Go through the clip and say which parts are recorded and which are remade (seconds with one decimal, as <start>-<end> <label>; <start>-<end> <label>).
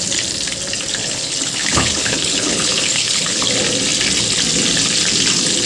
0.0-1.0 recorded; 1.0-3.4 remade; 3.4-5.6 recorded